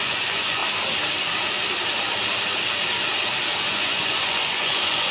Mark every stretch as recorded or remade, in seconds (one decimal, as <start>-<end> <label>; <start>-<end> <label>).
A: 0.0-0.6 remade; 0.6-3.7 recorded; 3.7-5.1 remade